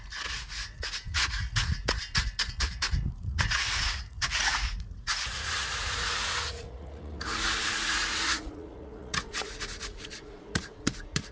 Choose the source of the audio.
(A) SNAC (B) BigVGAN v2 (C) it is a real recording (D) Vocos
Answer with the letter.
D